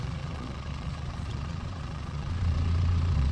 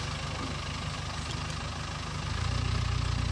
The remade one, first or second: first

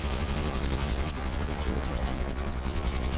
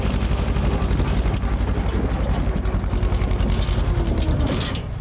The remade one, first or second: first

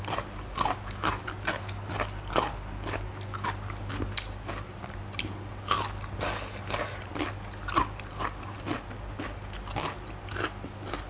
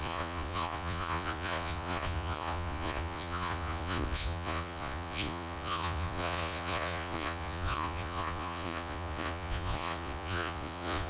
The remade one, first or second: second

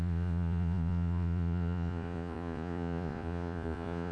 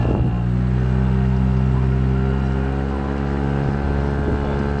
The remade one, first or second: first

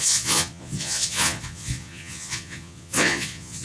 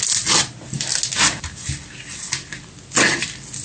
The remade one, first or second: first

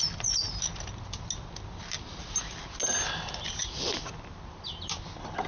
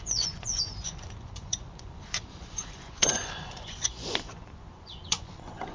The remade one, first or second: second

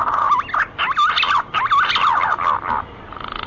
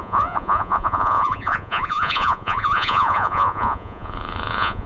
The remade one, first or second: second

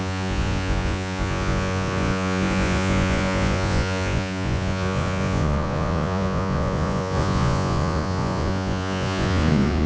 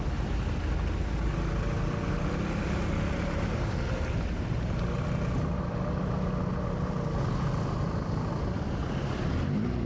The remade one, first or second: first